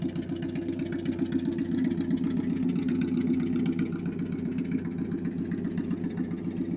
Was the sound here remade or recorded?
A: recorded